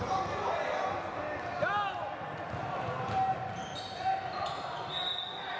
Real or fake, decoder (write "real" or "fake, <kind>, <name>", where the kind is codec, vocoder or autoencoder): real